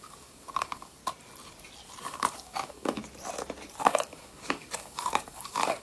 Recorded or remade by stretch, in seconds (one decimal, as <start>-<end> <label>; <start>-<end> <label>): 0.0-1.0 remade; 1.0-2.0 recorded; 2.0-3.0 remade; 3.0-3.8 recorded; 3.8-5.8 remade